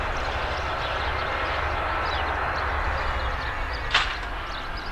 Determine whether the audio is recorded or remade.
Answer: recorded